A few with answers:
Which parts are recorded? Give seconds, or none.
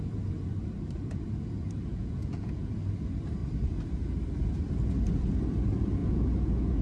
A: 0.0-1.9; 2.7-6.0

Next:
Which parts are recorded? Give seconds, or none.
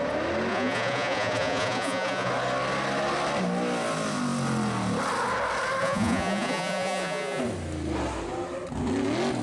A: 0.0-0.5; 2.3-5.8; 7.4-9.4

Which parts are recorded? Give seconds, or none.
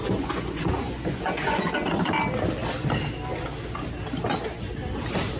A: 1.6-5.4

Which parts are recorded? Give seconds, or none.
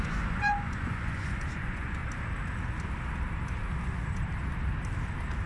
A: 2.0-5.5